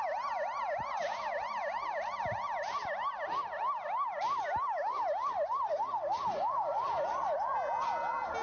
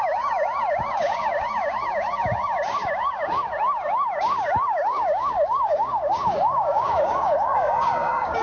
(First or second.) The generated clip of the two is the second